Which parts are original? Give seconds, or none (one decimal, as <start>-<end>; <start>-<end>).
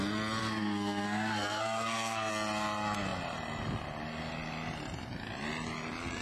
0.0-0.4; 2.3-6.2